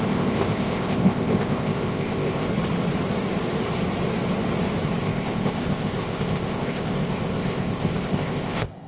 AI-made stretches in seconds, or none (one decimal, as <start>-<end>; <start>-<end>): 0.0-2.5; 5.0-8.9